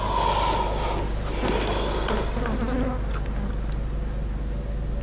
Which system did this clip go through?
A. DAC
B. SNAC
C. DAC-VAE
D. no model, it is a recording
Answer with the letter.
D